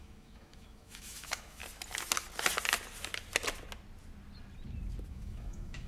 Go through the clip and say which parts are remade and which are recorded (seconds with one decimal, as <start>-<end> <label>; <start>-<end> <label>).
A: 0.0-1.6 remade; 1.6-5.1 recorded; 5.1-5.9 remade